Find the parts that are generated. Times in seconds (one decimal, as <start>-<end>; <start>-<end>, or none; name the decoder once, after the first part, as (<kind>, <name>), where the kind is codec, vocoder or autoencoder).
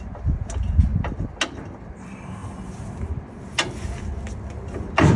none